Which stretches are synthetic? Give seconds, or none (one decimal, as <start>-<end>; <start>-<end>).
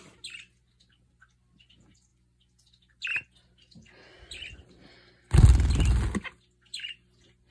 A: none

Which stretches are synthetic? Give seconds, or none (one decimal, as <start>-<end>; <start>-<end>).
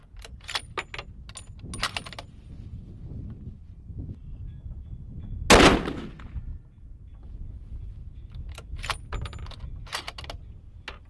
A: none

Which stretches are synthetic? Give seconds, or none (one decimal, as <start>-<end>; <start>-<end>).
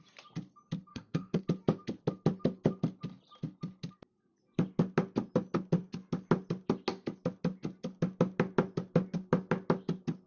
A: 0.9-1.4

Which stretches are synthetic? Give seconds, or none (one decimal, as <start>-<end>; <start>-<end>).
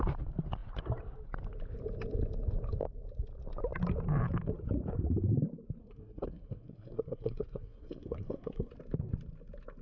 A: 5.8-8.7